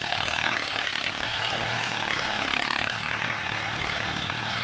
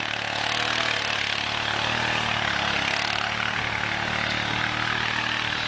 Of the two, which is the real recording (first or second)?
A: second